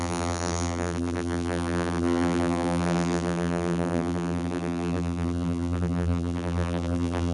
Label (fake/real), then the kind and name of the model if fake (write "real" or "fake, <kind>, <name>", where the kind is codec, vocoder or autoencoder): fake, vocoder, BigVGAN v2